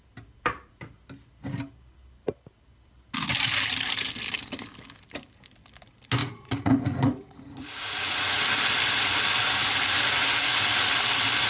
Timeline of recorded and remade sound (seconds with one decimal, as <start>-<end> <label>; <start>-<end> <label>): 0.0-6.2 recorded; 6.2-8.4 remade; 8.4-11.5 recorded